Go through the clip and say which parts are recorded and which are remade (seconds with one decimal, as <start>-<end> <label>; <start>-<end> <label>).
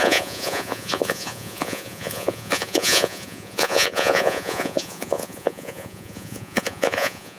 0.0-7.4 remade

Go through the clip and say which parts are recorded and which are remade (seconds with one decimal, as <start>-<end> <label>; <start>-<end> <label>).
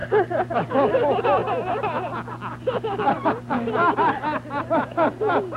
0.0-5.6 recorded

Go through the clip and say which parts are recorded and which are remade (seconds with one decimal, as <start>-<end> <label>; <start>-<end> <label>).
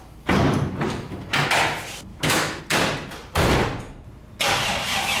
0.0-2.1 recorded; 2.1-2.6 remade; 2.6-5.2 recorded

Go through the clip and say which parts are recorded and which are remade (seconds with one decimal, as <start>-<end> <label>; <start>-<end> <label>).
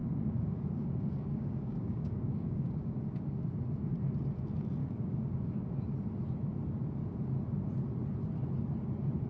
0.0-3.0 remade; 3.0-4.8 recorded; 4.8-5.5 remade; 5.5-9.3 recorded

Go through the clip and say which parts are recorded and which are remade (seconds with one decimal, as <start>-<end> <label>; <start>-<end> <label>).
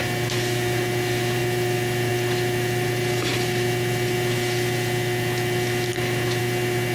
0.0-6.9 recorded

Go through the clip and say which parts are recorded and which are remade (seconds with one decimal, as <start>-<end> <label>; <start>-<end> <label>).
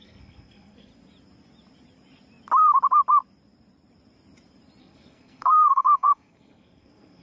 0.0-0.9 remade; 0.9-4.8 recorded; 4.8-7.2 remade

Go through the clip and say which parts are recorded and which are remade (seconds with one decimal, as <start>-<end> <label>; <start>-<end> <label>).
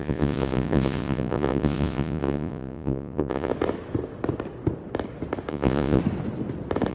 0.0-3.5 remade; 3.5-5.5 recorded; 5.5-6.0 remade; 6.0-6.9 recorded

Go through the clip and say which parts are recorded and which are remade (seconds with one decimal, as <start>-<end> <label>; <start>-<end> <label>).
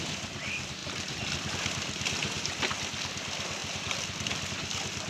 0.0-3.6 recorded; 3.6-4.5 remade; 4.5-5.1 recorded